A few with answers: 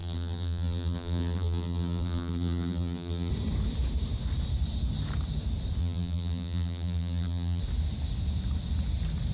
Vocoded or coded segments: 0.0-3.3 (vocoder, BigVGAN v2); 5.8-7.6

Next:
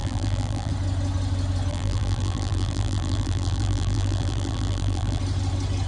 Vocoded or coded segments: 0.0-0.7 (vocoder, BigVGAN v2); 1.7-5.2

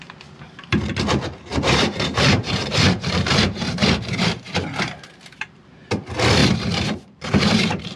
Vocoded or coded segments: 1.5-5.9 (vocoder, BigVGAN v2); 6.4-8.0

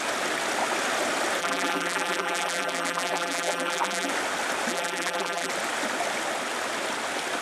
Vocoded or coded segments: 1.4-4.1 (vocoder, BigVGAN v2); 4.7-5.5

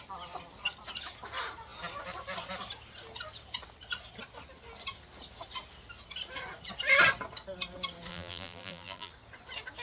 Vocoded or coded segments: 8.1-9.1 (vocoder, BigVGAN v2)

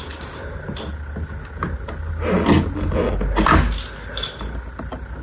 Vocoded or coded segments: none

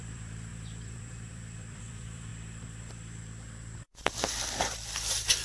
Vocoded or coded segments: 0.0-2.3 (vocoder, BigVGAN v2); 2.9-5.4

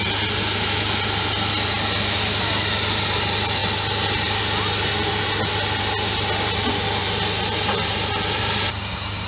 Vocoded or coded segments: none